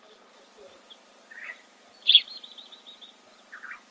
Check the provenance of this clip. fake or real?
real